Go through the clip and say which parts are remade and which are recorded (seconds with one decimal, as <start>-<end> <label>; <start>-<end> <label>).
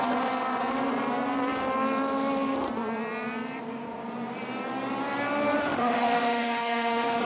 0.0-5.6 recorded; 5.6-7.2 remade